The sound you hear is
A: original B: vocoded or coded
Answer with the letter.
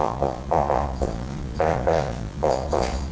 B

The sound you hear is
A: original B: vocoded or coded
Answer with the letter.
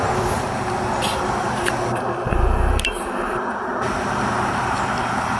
B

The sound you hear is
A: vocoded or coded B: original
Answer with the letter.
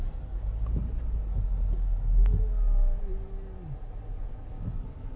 B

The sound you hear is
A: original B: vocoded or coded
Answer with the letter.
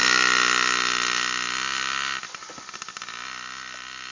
A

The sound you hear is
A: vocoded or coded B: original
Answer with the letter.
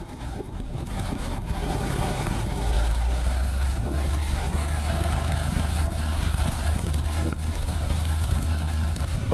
A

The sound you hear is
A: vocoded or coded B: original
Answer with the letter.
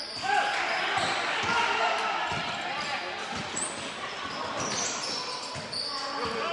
B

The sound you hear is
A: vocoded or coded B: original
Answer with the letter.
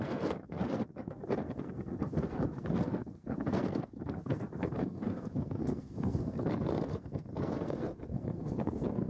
A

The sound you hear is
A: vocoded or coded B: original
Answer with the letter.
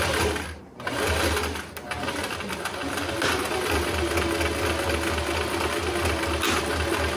B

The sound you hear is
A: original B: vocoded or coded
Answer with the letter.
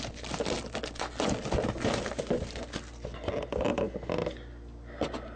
A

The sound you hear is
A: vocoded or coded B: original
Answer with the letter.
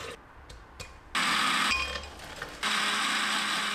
B